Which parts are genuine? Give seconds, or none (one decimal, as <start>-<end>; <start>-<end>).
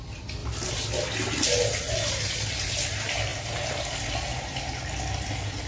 0.0-5.7